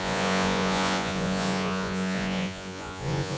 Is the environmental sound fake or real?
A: fake